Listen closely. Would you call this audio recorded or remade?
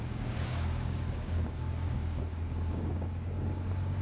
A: remade